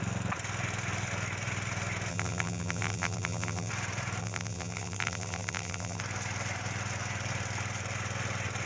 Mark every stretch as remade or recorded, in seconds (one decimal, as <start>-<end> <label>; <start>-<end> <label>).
0.0-2.1 recorded; 2.1-3.7 remade; 3.7-4.2 recorded; 4.2-6.0 remade; 6.0-8.7 recorded